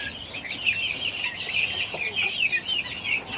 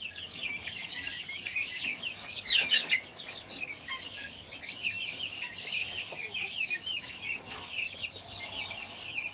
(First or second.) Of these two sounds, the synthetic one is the second